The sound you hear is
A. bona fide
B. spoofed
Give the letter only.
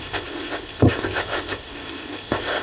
B